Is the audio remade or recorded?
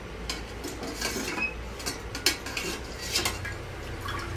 recorded